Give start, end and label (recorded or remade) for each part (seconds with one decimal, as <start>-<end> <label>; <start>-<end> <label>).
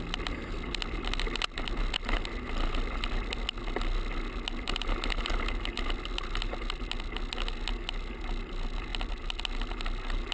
0.0-10.3 recorded